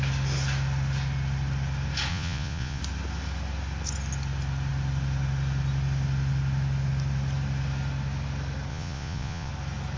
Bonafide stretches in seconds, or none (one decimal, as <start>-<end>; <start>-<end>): 0.0-2.1; 2.8-8.7; 9.5-10.0